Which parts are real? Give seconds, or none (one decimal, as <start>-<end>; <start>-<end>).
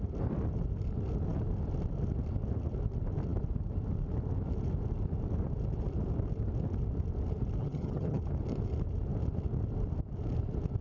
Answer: 0.0-7.6; 8.2-10.8